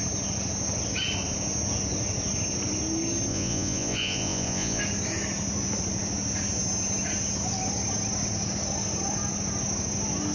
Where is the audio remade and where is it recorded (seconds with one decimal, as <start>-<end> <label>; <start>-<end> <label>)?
0.0-3.3 recorded; 3.3-4.8 remade; 4.8-10.3 recorded